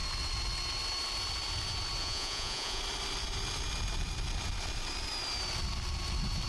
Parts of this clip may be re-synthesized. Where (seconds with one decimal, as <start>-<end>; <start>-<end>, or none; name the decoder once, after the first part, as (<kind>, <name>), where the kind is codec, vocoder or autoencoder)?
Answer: 2.0-2.8 (vocoder, Vocos)